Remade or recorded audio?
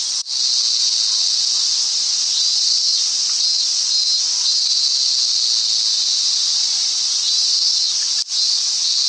recorded